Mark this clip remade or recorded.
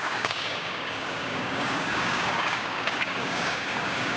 remade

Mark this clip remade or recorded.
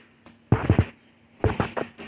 recorded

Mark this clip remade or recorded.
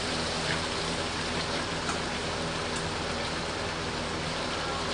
remade